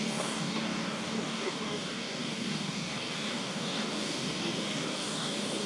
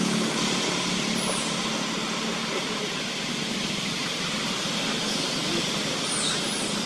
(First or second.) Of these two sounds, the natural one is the second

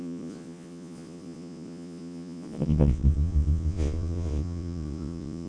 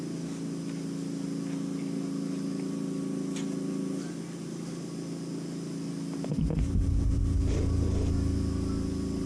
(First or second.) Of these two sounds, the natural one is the second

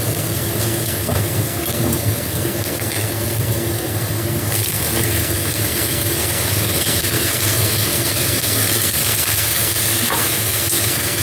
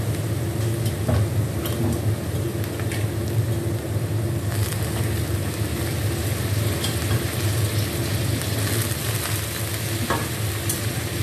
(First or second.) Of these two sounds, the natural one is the second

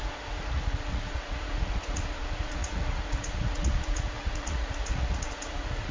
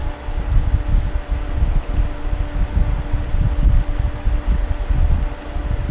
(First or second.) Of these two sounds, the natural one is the second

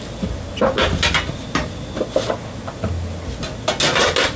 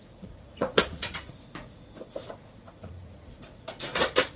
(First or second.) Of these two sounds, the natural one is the first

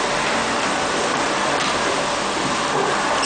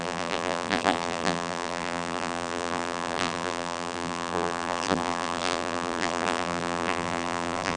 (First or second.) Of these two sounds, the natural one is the first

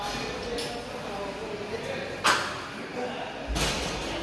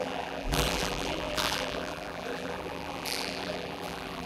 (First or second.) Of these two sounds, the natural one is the first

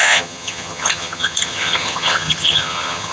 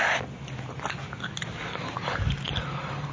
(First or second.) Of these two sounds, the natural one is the second